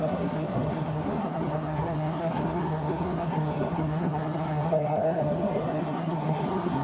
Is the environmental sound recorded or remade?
remade